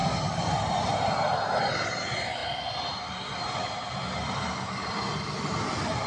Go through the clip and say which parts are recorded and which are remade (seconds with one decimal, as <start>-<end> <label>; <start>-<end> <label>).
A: 0.0-1.7 recorded; 1.7-2.4 remade; 2.4-4.9 recorded; 4.9-6.1 remade